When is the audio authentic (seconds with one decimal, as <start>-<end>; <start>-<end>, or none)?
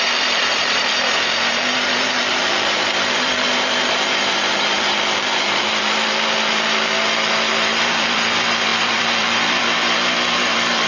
0.9-1.5